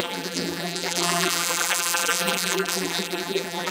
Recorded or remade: remade